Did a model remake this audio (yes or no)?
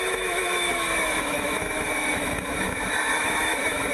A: yes